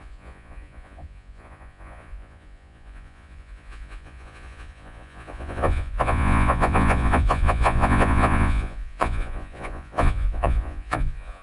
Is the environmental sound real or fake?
fake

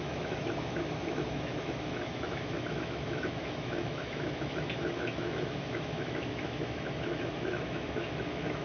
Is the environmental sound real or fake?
fake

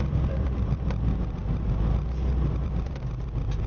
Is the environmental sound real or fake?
fake